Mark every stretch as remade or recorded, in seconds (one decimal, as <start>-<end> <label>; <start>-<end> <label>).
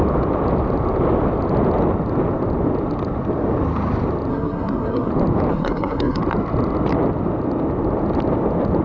0.0-4.3 recorded; 4.3-5.1 remade; 5.1-5.5 recorded; 5.5-6.2 remade; 6.2-8.8 recorded